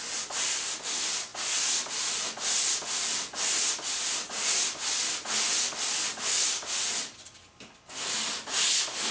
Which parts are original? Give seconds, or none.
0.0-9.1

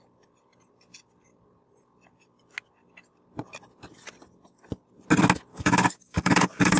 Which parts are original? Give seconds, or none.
0.0-5.5